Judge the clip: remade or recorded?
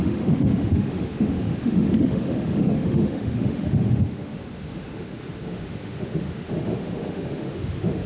remade